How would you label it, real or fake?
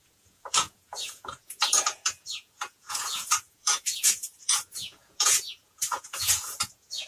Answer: fake